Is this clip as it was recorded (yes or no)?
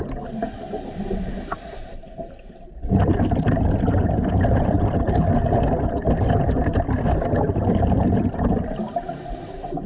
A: yes